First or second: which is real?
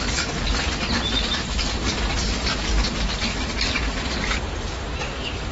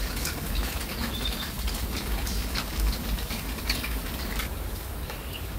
first